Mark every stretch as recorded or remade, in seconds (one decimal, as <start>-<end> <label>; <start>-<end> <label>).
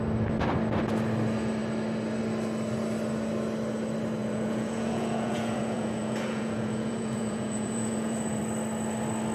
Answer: 0.0-4.2 recorded; 4.2-8.4 remade; 8.4-9.3 recorded